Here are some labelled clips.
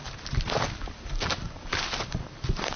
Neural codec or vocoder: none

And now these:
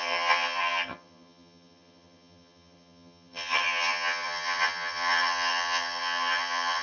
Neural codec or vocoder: vocoder, HiFi-GAN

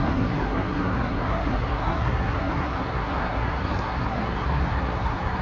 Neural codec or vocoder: codec, SNAC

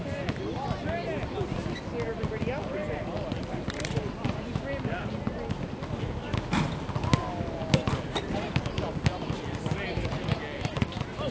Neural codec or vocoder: none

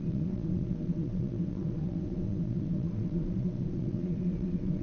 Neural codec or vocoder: vocoder, WaveNeXt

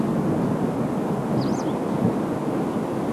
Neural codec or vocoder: none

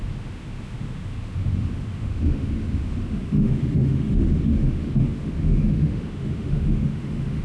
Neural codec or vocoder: autoencoder, DAC-VAE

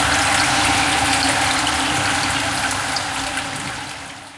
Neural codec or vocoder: none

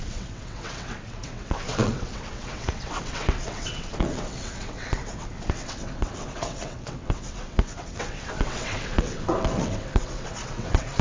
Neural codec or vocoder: vocoder, WaveNeXt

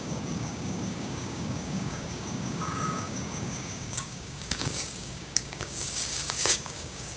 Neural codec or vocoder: codec, DAC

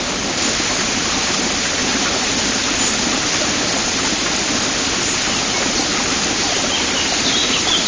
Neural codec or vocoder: none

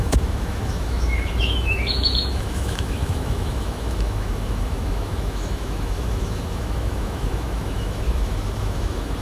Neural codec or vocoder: autoencoder, DAC-VAE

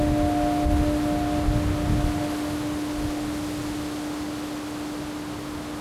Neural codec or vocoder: none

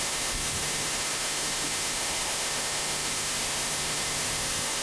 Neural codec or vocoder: autoencoder, DAC-VAE